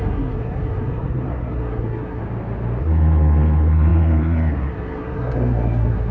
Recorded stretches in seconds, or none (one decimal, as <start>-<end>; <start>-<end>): 2.2-2.8